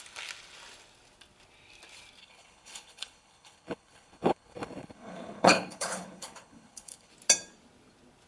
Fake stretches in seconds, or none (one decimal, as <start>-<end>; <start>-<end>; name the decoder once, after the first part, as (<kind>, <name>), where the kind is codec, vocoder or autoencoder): 2.2-7.1 (codec, HILCodec)